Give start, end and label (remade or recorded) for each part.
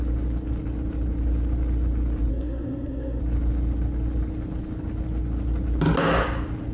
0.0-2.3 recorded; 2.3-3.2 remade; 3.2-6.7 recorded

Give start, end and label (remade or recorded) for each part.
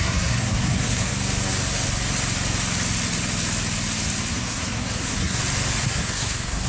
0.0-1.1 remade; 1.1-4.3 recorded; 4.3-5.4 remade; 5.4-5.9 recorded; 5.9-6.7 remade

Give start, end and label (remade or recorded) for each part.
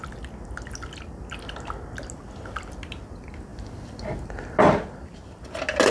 0.0-5.9 recorded